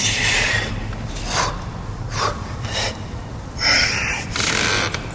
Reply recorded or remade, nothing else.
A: remade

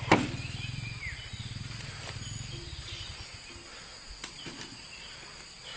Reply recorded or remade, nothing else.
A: recorded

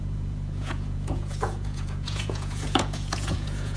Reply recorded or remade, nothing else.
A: remade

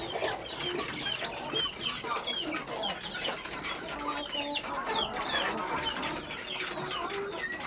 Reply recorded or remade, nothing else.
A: recorded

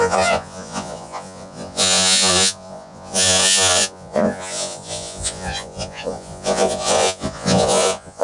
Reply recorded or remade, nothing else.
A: remade